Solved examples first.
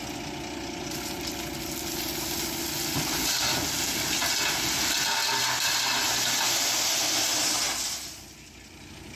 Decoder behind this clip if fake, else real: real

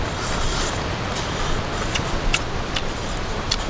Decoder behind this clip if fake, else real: real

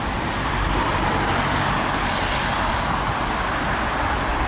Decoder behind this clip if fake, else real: real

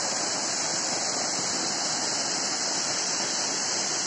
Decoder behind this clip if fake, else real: real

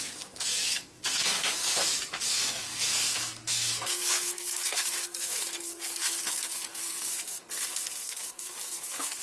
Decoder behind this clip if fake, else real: fake, codec, SNAC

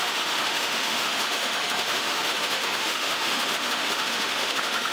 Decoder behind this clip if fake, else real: fake, autoencoder, DAC-VAE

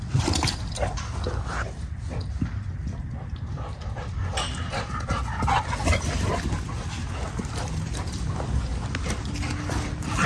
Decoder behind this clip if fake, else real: real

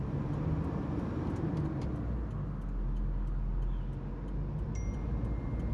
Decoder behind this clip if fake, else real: real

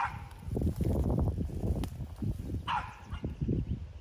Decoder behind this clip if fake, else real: real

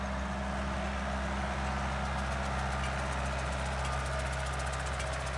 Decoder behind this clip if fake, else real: real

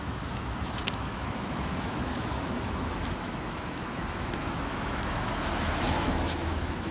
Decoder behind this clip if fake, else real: fake, autoencoder, DAC-VAE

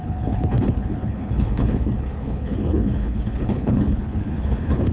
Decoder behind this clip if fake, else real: fake, codec, HILCodec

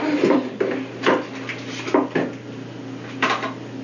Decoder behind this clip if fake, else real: real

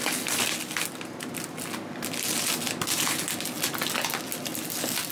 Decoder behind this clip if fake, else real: real